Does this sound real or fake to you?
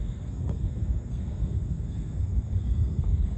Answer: fake